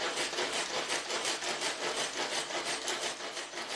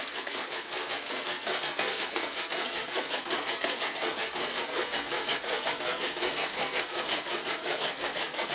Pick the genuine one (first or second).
first